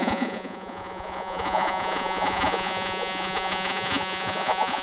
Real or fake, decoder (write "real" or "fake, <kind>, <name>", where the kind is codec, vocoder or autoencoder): fake, vocoder, Vocos